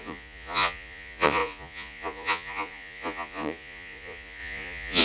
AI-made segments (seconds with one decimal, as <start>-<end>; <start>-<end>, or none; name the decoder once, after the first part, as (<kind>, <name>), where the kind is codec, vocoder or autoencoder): 0.0-5.0 (vocoder, Vocos)